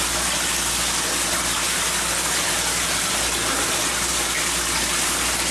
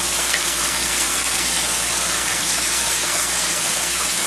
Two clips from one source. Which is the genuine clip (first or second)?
first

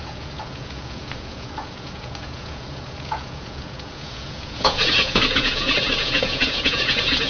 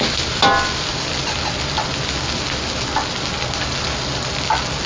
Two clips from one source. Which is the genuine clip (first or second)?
second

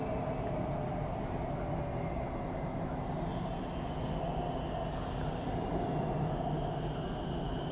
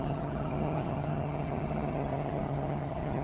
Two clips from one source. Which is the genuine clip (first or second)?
first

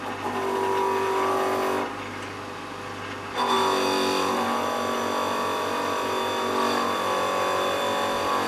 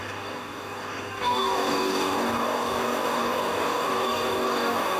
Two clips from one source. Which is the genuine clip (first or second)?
first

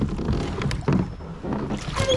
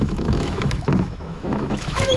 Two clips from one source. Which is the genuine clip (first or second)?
first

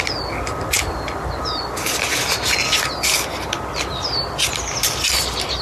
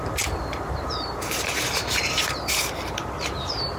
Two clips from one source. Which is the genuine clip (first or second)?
first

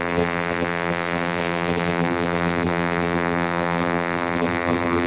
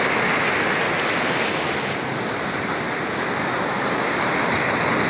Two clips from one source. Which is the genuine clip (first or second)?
second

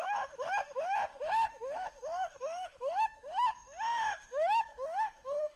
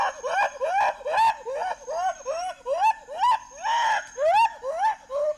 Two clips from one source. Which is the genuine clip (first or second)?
second